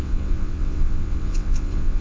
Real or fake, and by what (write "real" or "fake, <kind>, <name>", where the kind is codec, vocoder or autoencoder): fake, vocoder, WaveNeXt